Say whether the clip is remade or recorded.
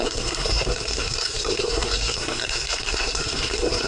remade